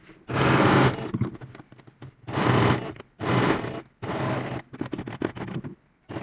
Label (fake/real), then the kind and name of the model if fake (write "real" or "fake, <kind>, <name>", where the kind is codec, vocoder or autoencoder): real